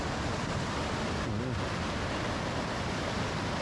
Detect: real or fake real